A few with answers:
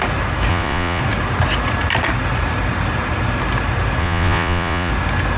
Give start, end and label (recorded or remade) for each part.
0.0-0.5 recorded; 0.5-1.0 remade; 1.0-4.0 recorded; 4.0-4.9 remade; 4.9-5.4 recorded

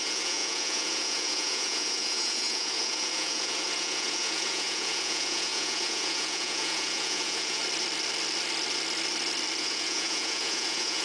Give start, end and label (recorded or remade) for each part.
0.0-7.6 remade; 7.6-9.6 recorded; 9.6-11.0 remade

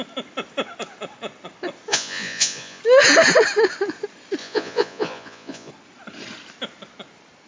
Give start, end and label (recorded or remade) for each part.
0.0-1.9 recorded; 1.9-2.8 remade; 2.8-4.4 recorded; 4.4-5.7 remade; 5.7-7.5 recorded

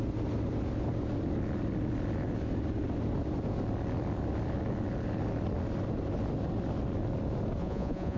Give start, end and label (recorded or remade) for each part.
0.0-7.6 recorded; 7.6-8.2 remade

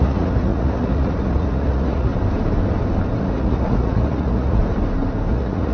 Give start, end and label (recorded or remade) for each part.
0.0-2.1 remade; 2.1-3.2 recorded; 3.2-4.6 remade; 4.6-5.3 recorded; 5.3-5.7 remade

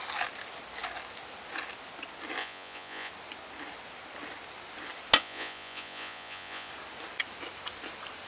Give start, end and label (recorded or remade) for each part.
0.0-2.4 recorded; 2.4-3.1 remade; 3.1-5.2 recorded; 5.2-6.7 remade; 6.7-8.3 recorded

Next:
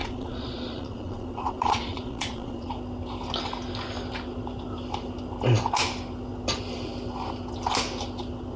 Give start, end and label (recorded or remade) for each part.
0.0-2.7 remade; 2.7-8.6 recorded

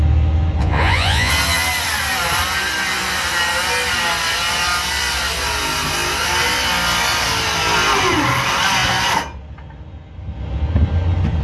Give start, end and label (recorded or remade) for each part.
0.0-0.6 recorded; 0.6-1.3 remade; 1.3-11.4 recorded